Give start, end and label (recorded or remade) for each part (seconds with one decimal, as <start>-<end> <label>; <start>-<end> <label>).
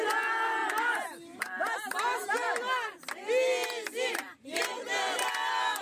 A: 0.0-5.8 recorded